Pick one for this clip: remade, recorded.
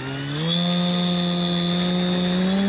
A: recorded